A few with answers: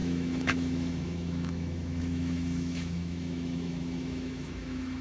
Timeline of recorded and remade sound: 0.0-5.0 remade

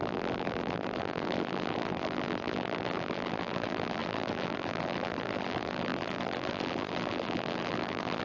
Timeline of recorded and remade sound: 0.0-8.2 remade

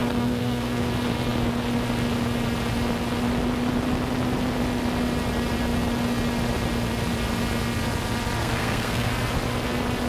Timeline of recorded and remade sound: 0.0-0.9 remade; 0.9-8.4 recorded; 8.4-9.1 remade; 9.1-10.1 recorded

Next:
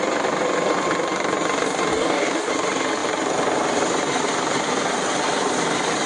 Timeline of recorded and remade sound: 0.0-1.9 recorded; 1.9-2.5 remade; 2.5-6.1 recorded